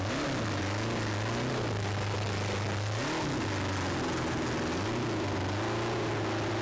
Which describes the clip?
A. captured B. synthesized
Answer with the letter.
A